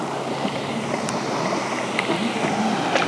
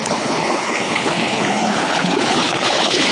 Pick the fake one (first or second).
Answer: second